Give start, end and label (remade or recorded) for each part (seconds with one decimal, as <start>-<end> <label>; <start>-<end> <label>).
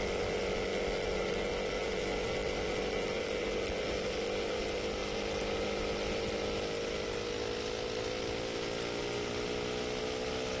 0.0-0.7 remade; 0.7-1.5 recorded; 1.5-5.0 remade; 5.0-10.0 recorded; 10.0-10.6 remade